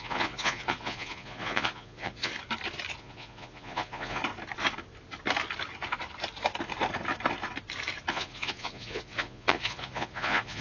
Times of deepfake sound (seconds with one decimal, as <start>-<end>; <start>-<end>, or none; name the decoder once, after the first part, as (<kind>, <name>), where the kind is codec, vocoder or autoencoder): 0.0-2.3 (vocoder, Vocos); 3.0-4.2; 8.1-10.6